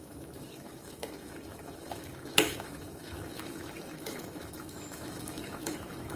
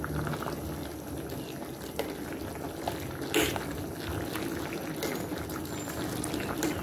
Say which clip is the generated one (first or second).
first